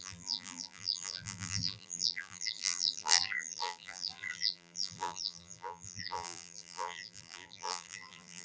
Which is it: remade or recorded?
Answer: remade